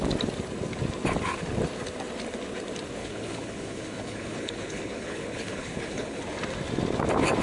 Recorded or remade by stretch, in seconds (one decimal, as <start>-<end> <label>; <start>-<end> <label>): 0.0-3.0 recorded; 3.0-6.2 remade; 6.2-7.4 recorded